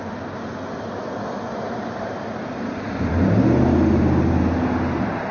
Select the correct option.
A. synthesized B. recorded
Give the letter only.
B